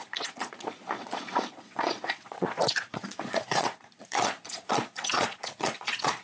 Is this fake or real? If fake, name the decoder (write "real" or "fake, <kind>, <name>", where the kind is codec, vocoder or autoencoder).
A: fake, vocoder, Vocos